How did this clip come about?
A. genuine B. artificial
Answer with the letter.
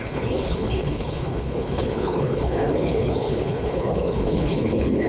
B